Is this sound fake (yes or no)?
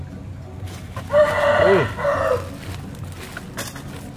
no